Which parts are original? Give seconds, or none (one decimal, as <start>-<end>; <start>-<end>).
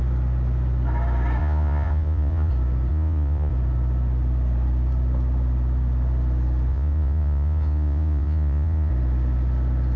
0.0-1.4; 2.5-2.9; 3.5-6.7; 8.9-10.0